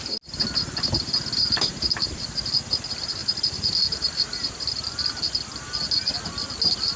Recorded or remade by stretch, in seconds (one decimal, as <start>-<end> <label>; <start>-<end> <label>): 0.0-1.7 recorded; 1.7-2.4 remade; 2.4-7.0 recorded